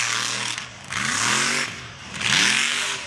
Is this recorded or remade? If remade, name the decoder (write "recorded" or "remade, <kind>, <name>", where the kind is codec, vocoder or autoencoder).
remade, codec, DAC